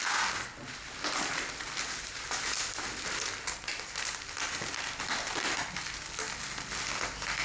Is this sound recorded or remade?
recorded